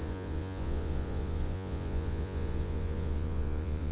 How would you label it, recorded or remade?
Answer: remade